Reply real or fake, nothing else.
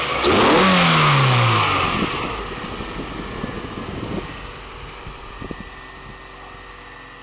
real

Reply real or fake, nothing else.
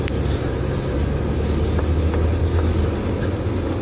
real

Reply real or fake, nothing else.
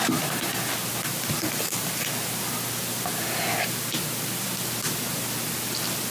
real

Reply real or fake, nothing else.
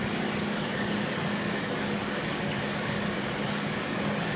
fake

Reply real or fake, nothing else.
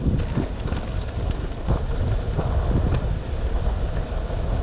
real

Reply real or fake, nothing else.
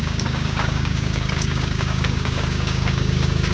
fake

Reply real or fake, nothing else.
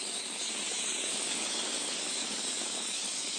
fake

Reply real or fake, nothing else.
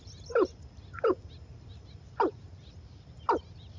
real